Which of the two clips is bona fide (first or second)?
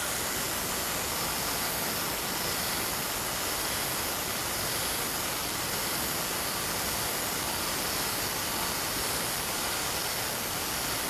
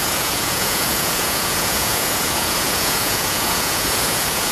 first